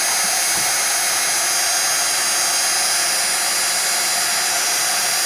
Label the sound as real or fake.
real